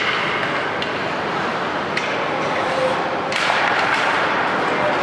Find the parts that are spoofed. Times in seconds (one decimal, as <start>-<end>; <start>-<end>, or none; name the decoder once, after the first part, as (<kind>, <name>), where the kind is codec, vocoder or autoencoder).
1.5-4.5 (vocoder, BigVGAN v2)